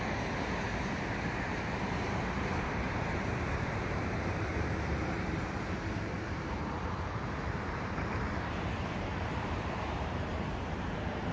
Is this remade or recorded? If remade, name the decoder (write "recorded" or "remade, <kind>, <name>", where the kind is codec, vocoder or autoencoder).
remade, vocoder, BigVGAN v2